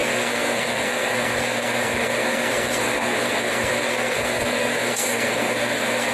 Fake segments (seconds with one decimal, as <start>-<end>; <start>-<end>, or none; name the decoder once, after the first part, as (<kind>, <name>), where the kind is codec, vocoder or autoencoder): 0.0-6.1 (codec, SNAC)